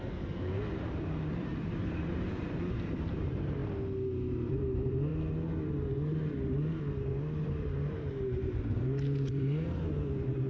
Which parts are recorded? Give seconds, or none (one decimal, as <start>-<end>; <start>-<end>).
3.6-4.5; 5.1-7.1